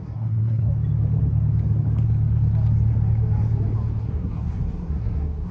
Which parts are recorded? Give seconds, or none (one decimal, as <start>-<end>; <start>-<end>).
0.7-4.0